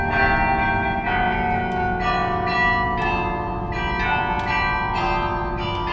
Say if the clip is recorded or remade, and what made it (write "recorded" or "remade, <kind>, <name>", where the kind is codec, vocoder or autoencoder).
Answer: recorded